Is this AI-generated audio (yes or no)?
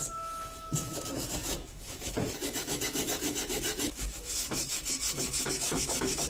yes